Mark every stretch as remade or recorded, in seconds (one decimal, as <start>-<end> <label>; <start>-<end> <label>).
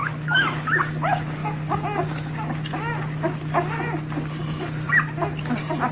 0.0-5.9 recorded